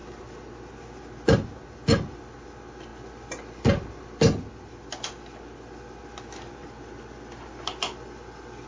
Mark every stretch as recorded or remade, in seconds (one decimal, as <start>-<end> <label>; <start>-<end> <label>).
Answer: 0.0-8.7 recorded